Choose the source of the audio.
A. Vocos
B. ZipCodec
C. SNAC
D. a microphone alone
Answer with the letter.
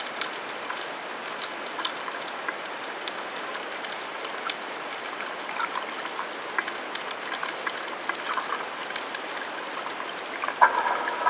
D